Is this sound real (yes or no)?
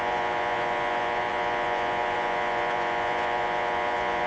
no